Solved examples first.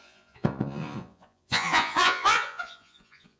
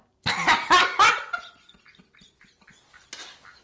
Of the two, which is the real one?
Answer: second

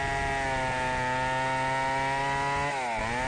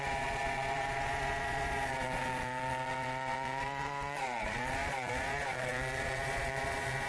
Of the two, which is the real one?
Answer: first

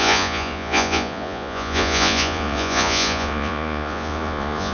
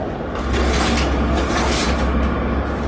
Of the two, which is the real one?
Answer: second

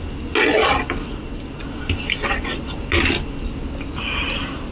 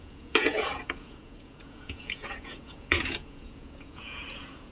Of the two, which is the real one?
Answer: first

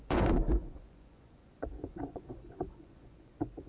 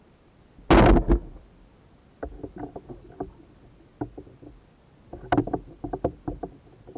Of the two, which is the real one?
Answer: second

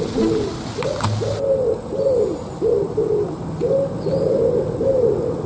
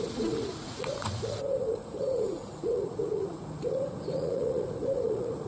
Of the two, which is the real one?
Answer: first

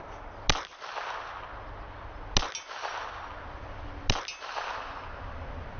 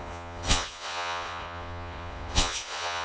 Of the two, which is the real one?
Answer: first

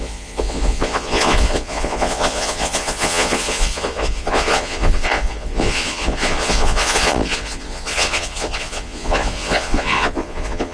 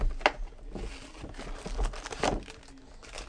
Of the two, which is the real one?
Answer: second